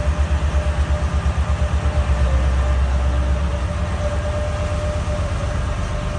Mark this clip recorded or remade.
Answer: recorded